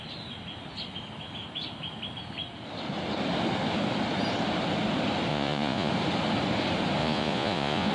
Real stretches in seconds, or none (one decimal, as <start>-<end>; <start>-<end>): 0.0-5.3; 5.9-7.0